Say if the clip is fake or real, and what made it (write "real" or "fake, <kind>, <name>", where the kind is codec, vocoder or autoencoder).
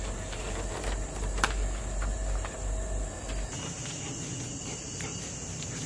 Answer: real